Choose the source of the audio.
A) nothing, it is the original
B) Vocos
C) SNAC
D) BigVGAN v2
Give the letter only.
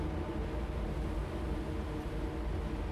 A